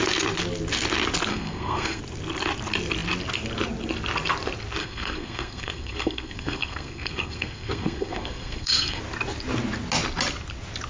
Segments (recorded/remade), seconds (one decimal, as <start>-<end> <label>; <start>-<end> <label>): 0.0-1.3 recorded; 1.3-2.0 remade; 2.0-4.8 recorded; 4.8-9.0 remade; 9.0-10.9 recorded